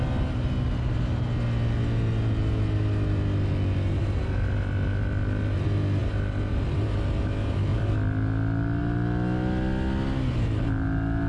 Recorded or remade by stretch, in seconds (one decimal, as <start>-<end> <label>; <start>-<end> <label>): 0.0-11.3 recorded